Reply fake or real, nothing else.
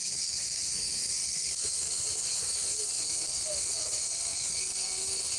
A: fake